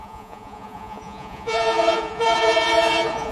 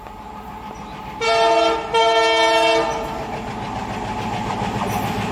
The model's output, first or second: first